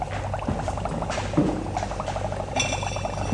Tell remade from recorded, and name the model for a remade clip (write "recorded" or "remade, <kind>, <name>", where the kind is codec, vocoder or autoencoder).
recorded